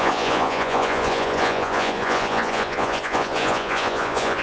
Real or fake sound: fake